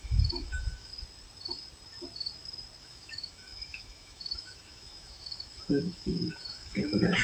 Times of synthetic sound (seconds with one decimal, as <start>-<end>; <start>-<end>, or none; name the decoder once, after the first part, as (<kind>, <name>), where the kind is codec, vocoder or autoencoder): 0.0-0.9 (autoencoder, DAC-VAE); 2.8-7.2